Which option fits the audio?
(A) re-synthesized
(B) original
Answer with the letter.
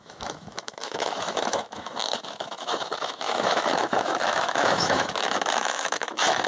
A